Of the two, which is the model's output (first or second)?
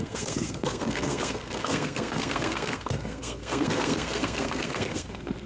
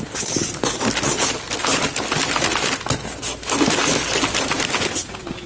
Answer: first